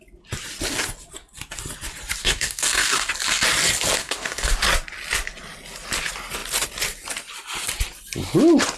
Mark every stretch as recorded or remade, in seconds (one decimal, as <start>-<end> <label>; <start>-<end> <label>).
0.0-2.2 recorded; 2.2-3.1 remade; 3.1-4.0 recorded; 4.0-4.5 remade; 4.5-8.8 recorded